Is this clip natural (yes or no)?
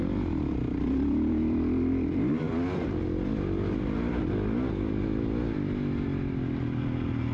yes